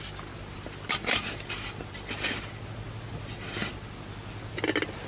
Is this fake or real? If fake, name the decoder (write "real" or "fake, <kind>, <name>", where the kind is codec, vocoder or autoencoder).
real